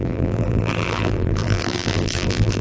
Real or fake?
fake